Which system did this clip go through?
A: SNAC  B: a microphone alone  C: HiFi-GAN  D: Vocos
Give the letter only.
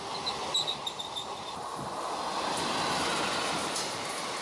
B